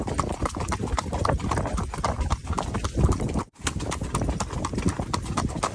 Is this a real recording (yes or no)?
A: yes